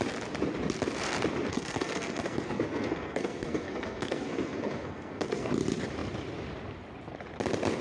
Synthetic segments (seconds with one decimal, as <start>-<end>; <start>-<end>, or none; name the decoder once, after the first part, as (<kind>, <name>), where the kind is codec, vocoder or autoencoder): 1.5-5.5 (codec, SNAC)